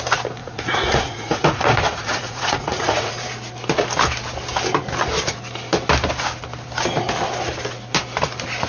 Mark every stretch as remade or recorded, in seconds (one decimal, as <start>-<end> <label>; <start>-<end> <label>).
0.0-0.4 recorded; 0.4-3.1 remade; 3.1-8.7 recorded